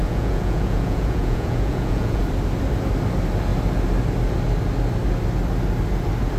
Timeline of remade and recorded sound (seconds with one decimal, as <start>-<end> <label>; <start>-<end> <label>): 0.0-2.2 remade; 2.2-6.4 recorded